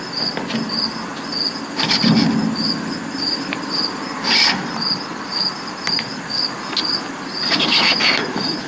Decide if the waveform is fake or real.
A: real